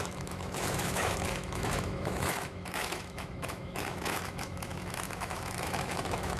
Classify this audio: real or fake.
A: fake